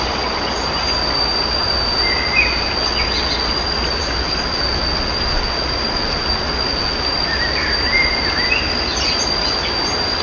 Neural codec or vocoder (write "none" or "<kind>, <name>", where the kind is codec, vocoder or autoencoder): none